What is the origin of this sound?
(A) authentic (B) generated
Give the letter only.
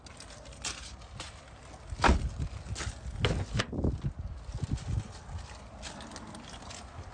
A